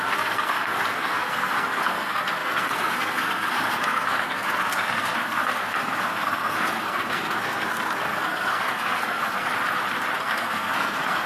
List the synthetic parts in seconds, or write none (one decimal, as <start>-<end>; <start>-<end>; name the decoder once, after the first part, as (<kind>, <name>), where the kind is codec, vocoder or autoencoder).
0.0-9.5 (codec, SNAC); 10.2-11.3

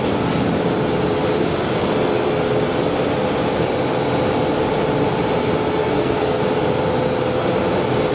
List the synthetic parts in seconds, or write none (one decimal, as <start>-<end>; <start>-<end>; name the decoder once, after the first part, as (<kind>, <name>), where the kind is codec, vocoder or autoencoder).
5.8-6.4 (codec, SNAC)

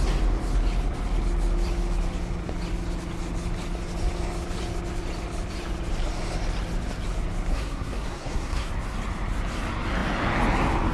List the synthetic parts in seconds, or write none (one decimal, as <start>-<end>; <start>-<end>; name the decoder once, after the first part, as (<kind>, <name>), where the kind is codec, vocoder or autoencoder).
7.5-8.7 (codec, SNAC)

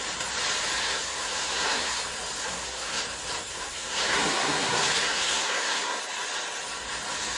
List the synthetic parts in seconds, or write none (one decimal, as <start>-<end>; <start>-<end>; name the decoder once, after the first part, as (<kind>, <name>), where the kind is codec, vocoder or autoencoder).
0.8-2.0 (codec, SNAC); 2.4-3.0; 3.5-6.0

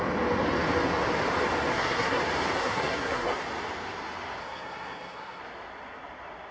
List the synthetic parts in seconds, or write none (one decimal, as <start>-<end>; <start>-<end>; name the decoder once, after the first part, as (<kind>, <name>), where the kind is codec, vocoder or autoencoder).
1.7-2.2 (codec, SNAC); 2.6-3.3; 4.4-5.4